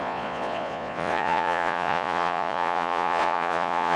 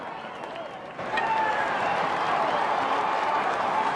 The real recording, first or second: second